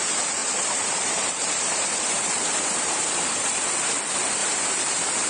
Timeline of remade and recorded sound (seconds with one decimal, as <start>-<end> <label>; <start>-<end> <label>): 0.0-0.4 recorded; 0.4-3.6 remade; 3.6-4.4 recorded; 4.4-5.3 remade